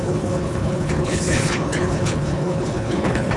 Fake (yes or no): yes